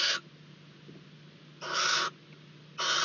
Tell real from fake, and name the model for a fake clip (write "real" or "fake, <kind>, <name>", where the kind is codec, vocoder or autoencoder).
real